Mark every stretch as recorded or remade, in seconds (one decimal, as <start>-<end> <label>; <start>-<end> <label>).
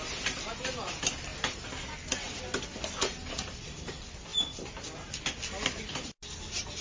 0.0-6.8 recorded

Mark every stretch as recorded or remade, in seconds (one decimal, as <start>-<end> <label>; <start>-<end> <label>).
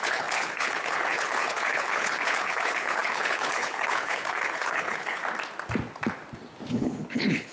0.0-5.2 remade; 5.2-6.7 recorded; 6.7-7.5 remade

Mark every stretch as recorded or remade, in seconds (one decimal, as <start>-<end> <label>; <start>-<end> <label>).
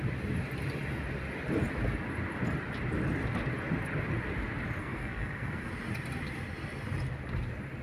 0.0-4.8 recorded; 4.8-5.7 remade; 5.7-7.8 recorded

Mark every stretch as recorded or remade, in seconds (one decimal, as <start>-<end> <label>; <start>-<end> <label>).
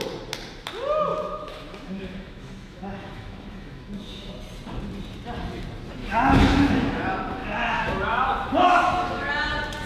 0.0-1.1 recorded; 1.1-4.3 remade; 4.3-6.0 recorded; 6.0-7.0 remade; 7.0-7.4 recorded; 7.4-9.3 remade; 9.3-9.9 recorded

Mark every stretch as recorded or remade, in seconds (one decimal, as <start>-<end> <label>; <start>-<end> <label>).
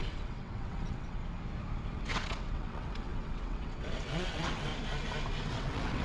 0.0-1.2 remade; 1.2-1.9 recorded; 1.9-4.7 remade; 4.7-5.5 recorded; 5.5-6.0 remade